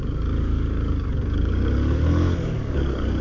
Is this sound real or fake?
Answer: fake